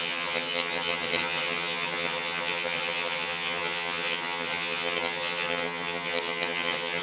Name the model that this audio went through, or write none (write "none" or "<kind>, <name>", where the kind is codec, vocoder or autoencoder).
vocoder, HiFi-GAN